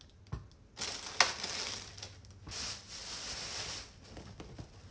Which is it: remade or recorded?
recorded